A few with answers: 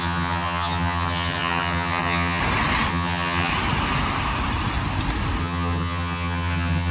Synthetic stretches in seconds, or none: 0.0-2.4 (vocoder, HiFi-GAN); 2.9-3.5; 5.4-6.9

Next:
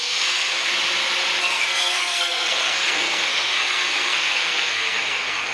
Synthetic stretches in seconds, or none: 0.0-0.7 (codec, SNAC); 1.4-5.5

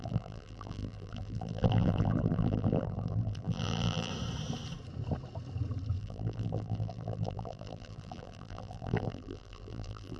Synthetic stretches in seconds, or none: 0.0-4.1 (vocoder, BigVGAN v2); 6.0-10.2

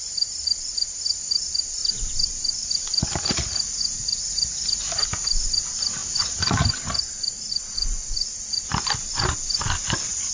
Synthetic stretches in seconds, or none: 1.8-3.3 (vocoder, BigVGAN v2)